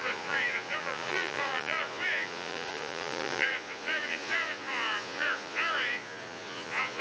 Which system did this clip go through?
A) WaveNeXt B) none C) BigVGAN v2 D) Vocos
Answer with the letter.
D